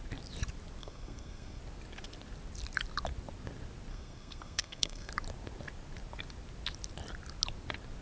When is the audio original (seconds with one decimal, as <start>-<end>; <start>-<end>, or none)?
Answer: 0.0-0.8; 1.6-3.9; 5.1-8.0